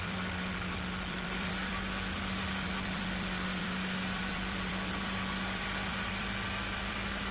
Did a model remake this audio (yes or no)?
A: yes